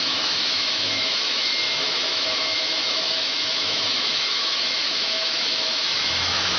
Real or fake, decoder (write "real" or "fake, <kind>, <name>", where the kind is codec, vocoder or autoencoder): fake, autoencoder, DAC-VAE